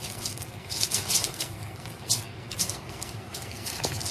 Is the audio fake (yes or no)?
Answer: yes